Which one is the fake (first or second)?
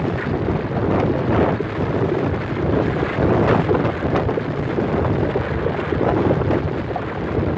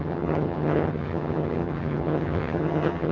second